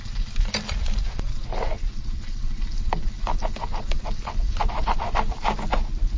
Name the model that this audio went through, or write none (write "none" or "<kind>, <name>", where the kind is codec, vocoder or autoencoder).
none